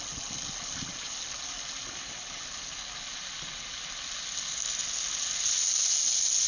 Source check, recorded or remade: recorded